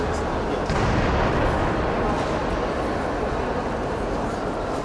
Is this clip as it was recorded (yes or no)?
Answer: yes